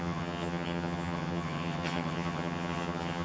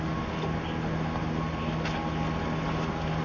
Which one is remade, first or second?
first